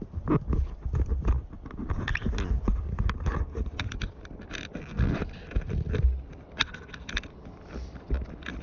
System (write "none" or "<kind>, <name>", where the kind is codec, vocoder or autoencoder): none